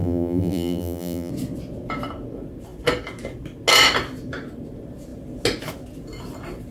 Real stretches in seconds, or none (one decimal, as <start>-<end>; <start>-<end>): 1.3-6.7